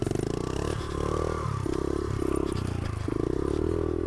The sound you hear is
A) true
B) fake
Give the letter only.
A